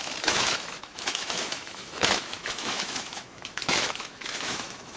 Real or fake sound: fake